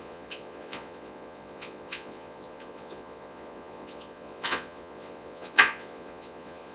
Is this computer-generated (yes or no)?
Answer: yes